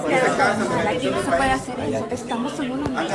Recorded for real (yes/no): no